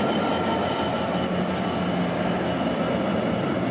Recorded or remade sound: recorded